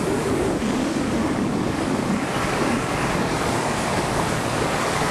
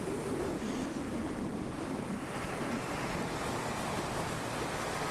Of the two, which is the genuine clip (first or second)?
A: second